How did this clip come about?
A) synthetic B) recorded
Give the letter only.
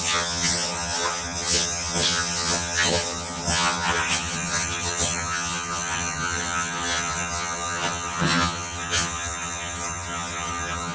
A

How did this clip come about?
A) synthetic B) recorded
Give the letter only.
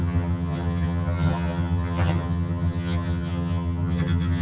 A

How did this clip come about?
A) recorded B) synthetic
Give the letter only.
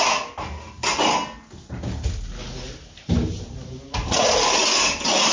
A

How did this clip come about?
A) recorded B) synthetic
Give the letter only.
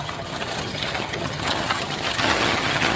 B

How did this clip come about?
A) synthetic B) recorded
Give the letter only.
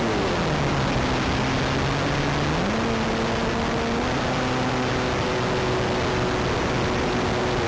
B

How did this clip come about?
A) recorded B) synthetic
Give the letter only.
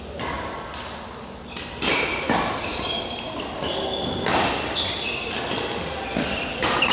A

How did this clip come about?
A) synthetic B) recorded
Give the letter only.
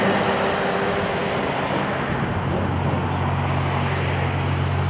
B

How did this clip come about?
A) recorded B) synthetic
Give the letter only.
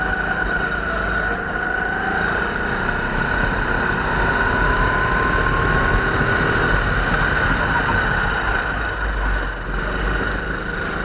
A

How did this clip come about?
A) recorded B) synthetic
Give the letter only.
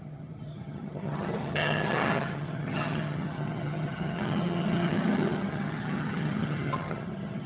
B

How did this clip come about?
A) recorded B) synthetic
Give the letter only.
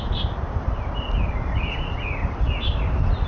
A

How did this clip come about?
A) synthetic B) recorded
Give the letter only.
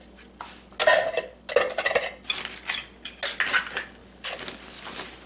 B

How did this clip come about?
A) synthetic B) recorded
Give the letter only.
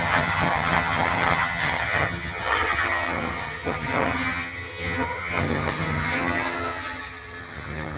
A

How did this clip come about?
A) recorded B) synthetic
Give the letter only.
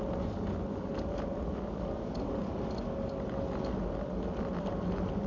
A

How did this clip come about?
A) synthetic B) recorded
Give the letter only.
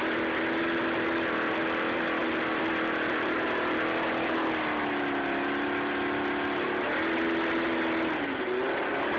B